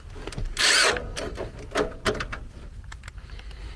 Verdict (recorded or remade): recorded